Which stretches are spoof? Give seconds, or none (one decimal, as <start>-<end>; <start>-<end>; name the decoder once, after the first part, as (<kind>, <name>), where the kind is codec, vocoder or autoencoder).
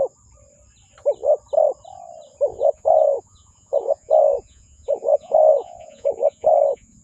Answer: 2.5-7.0 (vocoder, Vocos)